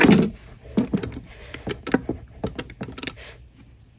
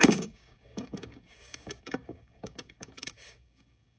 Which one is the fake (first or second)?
second